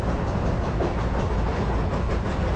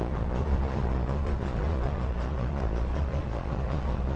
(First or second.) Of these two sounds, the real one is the first